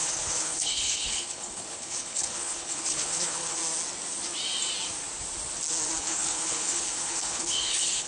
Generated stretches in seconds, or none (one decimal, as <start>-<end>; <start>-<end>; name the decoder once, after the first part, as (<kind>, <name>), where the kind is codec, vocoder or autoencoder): 0.0-3.6 (codec, HILCodec); 6.0-8.1